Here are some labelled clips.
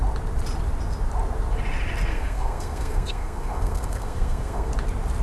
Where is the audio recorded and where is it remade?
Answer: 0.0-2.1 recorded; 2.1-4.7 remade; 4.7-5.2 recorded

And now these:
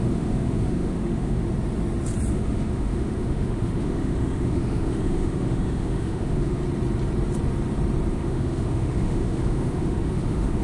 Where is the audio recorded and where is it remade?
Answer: 0.0-1.4 remade; 1.4-2.3 recorded; 2.3-6.6 remade; 6.6-8.1 recorded; 8.1-10.6 remade

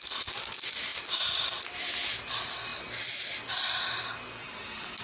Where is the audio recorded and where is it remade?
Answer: 0.0-5.0 recorded